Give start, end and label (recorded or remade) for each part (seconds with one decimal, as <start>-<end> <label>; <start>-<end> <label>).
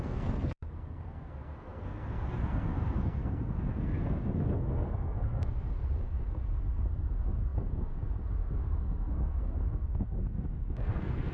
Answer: 0.0-11.3 remade